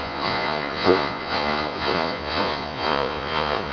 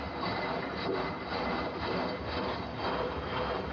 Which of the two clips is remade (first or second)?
first